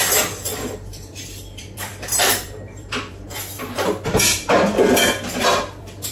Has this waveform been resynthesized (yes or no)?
yes